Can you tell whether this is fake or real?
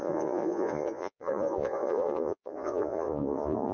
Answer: fake